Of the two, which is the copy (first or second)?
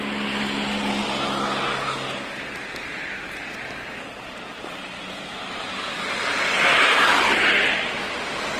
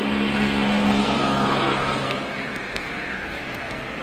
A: second